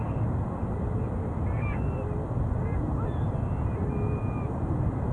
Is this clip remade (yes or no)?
no